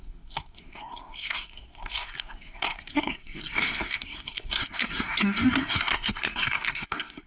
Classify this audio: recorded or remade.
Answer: remade